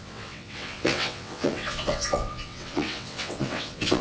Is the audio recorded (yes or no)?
no